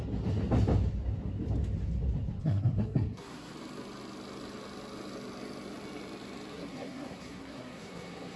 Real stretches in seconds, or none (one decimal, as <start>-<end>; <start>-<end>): 0.0-2.4; 3.5-6.5